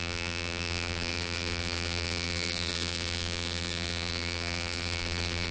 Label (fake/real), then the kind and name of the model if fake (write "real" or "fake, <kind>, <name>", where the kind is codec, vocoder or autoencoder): fake, vocoder, BigVGAN v2